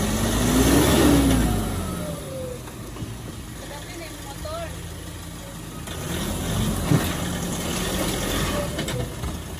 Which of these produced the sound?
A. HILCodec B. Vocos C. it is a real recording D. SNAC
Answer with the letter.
C